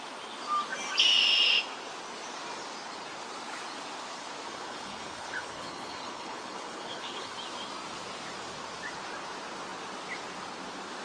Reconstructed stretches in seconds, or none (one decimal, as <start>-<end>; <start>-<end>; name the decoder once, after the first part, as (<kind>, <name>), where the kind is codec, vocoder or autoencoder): 4.5-7.3 (codec, HILCodec)